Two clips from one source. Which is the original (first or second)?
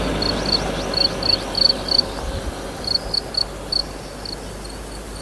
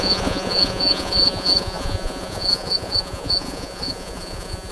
first